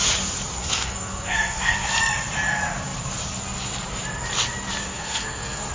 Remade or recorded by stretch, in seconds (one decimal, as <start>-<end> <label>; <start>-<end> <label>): 0.0-0.6 recorded; 0.6-1.9 remade; 1.9-4.9 recorded; 4.9-5.7 remade